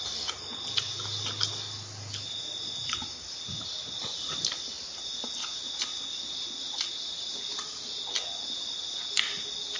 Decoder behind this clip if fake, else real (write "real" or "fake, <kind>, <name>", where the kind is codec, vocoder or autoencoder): real